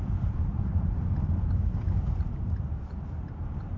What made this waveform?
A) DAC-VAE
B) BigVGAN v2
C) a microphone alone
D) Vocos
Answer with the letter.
B